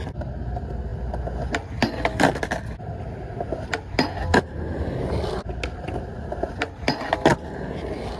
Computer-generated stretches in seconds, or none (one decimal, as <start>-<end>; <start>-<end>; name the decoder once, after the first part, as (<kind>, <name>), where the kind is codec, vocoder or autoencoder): none